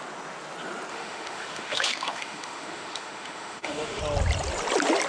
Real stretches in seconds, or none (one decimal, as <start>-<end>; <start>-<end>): 0.0-0.9; 4.0-5.1